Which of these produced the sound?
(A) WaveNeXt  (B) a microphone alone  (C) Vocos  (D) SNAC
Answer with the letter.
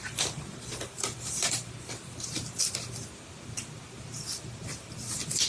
B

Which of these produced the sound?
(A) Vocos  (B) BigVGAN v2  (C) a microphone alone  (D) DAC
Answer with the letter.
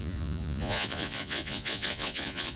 A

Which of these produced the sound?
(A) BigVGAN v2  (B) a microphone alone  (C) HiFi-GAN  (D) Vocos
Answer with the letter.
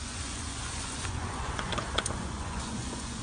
D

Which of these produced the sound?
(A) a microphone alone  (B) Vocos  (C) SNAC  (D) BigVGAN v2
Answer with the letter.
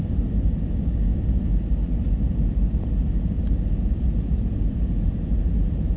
A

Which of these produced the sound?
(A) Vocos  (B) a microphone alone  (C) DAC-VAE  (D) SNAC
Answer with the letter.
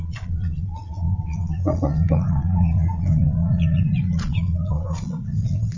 A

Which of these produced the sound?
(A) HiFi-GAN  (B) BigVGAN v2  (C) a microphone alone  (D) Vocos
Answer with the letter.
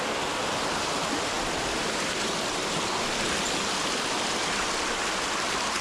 C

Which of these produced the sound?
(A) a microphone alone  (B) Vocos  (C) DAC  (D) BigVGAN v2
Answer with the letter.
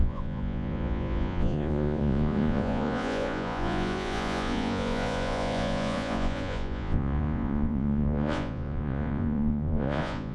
B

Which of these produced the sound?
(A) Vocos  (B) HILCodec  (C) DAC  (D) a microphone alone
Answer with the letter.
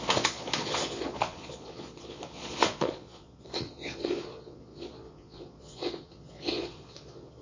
A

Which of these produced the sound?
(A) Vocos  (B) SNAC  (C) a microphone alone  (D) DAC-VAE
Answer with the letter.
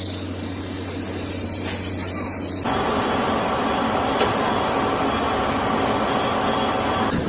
C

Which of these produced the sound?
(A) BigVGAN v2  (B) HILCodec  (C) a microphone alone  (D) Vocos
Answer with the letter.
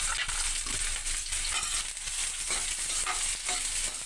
C